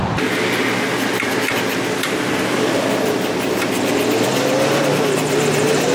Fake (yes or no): no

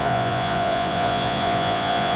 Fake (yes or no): yes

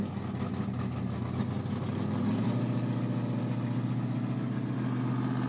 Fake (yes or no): no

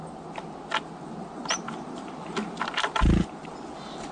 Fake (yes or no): no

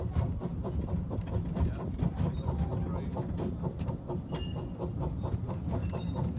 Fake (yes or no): no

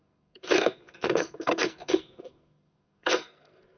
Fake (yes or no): yes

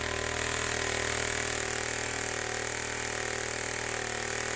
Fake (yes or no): no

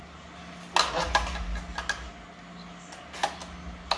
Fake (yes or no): no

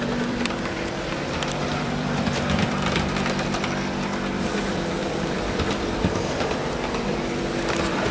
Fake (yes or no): yes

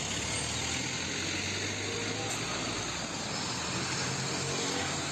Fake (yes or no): no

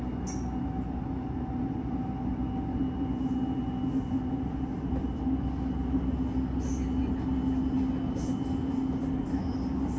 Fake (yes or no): no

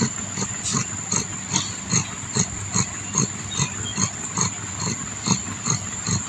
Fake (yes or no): no